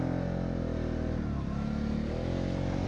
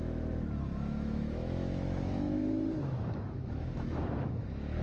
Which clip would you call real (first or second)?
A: first